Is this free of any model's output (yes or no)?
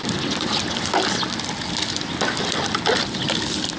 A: yes